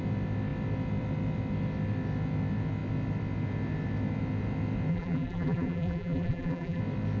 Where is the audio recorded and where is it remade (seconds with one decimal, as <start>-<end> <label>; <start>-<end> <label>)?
0.0-4.9 recorded; 4.9-6.8 remade; 6.8-7.2 recorded